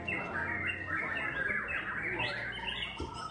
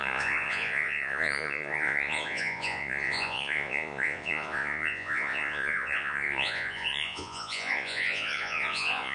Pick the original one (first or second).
first